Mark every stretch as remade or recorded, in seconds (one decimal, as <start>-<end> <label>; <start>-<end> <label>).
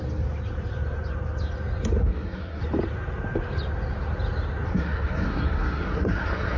0.0-2.0 recorded; 2.0-2.6 remade; 2.6-4.7 recorded; 4.7-6.6 remade